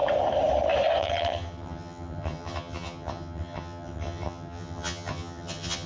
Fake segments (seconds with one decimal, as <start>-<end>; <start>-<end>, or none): 1.0-5.9